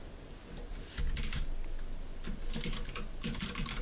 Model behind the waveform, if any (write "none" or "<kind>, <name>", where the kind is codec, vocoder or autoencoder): none